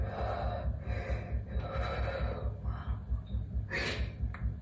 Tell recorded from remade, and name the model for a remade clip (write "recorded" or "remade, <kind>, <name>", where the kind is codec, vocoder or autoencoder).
recorded